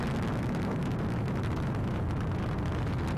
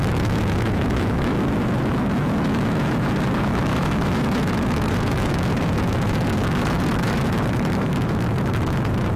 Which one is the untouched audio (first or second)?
first